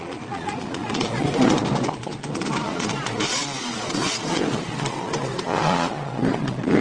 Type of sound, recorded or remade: remade